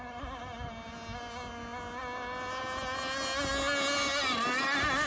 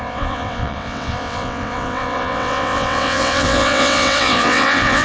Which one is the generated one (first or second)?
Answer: second